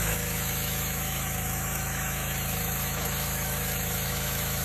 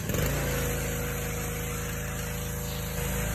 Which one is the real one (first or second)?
second